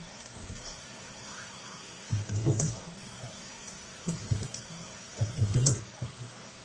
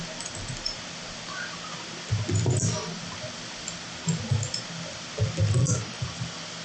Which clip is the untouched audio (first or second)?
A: second